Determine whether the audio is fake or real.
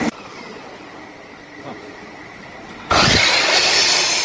real